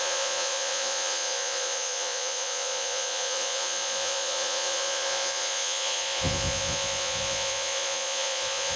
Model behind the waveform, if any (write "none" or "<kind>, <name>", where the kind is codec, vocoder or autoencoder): vocoder, Vocos